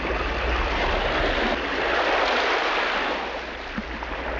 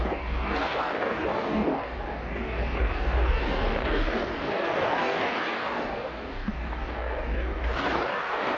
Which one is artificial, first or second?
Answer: second